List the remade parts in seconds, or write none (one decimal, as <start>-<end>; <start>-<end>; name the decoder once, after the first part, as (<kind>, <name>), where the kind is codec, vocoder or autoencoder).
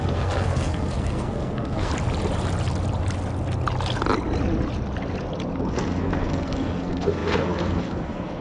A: 0.0-1.9 (codec, SNAC); 5.6-8.4